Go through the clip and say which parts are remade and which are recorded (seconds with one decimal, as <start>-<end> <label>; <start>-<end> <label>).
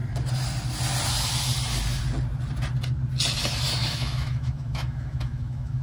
0.0-3.8 recorded; 3.8-5.8 remade